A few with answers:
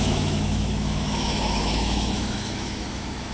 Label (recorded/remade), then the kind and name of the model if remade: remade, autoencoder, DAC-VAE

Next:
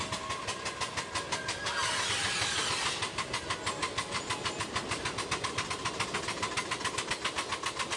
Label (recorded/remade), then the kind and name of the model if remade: recorded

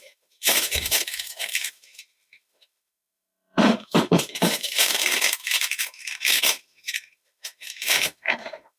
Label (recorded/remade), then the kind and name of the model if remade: remade, autoencoder, DAC-VAE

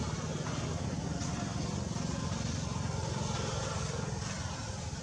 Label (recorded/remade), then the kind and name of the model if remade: recorded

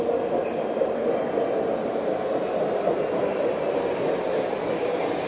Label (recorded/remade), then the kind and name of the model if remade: recorded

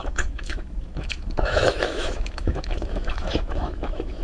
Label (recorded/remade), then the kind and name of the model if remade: remade, autoencoder, DAC-VAE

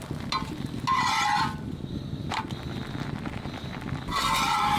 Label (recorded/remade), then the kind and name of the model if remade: recorded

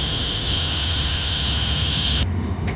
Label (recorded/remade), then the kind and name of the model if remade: remade, autoencoder, DAC-VAE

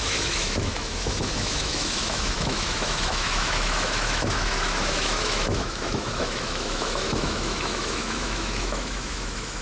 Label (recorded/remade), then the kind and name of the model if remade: remade, autoencoder, DAC-VAE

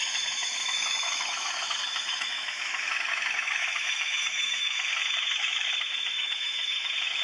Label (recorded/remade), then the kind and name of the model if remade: remade, autoencoder, DAC-VAE